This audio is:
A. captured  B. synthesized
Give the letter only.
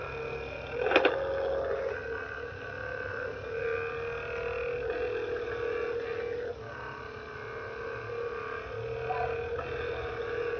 A